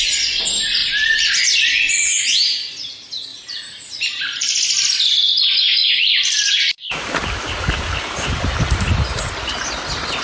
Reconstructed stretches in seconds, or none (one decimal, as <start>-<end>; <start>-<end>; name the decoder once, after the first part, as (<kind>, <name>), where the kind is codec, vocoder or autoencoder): 0.8-1.4 (vocoder, BigVGAN v2); 2.3-2.9; 3.3-4.7; 5.8-8.9